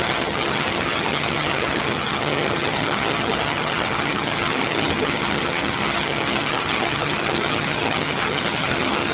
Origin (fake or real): fake